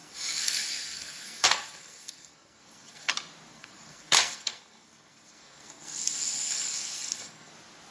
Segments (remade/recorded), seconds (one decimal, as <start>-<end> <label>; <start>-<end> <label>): 0.0-3.1 remade; 3.1-3.5 recorded; 3.5-7.5 remade; 7.5-7.9 recorded